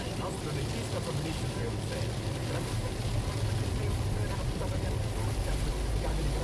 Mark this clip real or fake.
real